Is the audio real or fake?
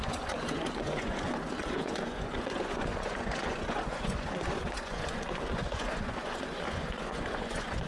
fake